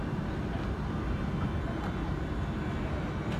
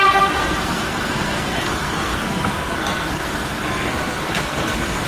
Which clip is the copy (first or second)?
second